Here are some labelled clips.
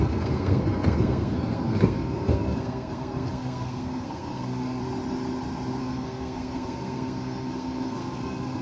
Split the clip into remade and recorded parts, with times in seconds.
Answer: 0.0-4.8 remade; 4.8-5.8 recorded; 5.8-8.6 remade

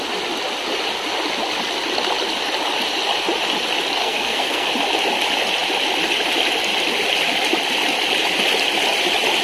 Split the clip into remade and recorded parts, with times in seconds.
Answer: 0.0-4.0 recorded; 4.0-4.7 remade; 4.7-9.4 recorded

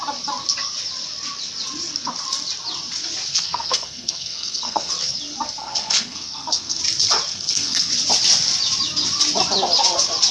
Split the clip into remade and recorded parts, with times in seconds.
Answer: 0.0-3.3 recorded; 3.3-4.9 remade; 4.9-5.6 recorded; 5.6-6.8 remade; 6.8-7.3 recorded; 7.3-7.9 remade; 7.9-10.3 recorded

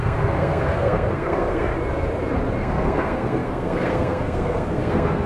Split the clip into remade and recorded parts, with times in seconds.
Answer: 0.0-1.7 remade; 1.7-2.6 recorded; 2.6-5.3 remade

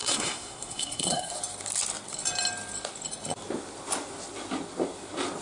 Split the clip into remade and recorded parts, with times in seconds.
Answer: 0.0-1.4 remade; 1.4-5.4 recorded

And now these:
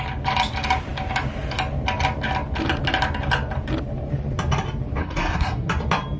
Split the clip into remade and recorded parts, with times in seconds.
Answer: 0.0-5.0 recorded; 5.0-5.7 remade; 5.7-6.2 recorded

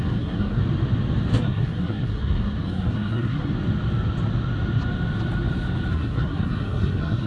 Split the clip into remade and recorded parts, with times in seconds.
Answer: 0.0-0.6 remade; 0.6-1.4 recorded; 1.4-3.5 remade; 3.5-5.9 recorded; 5.9-7.3 remade

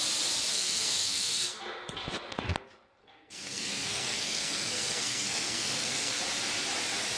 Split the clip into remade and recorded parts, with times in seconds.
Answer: 0.0-0.5 recorded; 0.5-1.6 remade; 1.6-3.0 recorded; 3.0-6.2 remade; 6.2-7.2 recorded